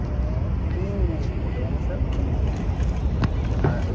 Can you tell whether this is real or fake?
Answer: real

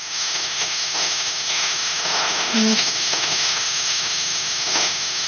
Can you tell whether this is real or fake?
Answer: fake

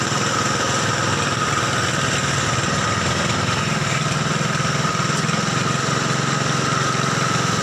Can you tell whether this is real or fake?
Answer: real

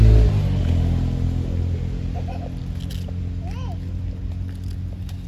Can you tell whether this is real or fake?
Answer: real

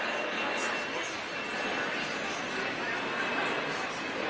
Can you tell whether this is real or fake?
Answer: real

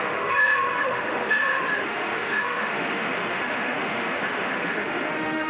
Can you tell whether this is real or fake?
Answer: fake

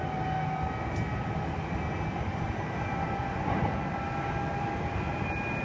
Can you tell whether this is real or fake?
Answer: real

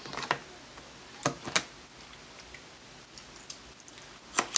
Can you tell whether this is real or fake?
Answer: real